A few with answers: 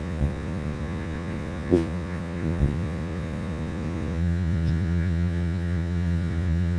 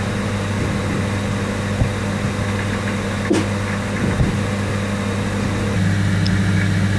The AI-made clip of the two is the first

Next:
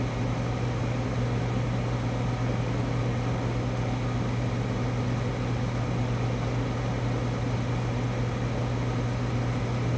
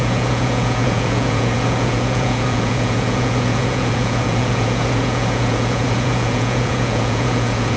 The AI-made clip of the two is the second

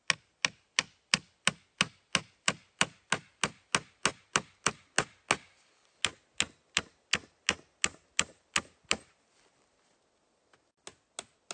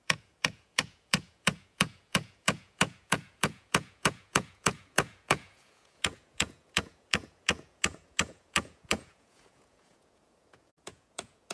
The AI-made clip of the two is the second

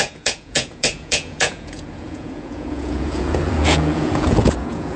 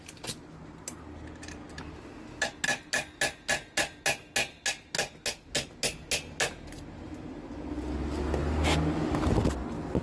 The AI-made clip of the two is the first